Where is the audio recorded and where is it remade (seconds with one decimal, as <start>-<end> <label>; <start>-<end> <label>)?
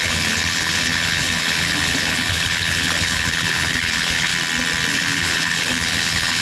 0.0-4.3 remade; 4.3-4.9 recorded; 4.9-6.4 remade